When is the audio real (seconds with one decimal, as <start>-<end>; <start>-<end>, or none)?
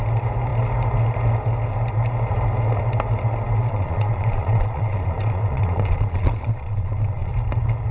0.0-3.7; 7.3-7.9